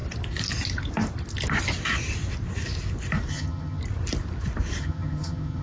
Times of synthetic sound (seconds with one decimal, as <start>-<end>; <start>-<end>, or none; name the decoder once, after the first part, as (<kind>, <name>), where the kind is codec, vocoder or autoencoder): 3.3-3.8 (vocoder, HiFi-GAN); 4.8-5.6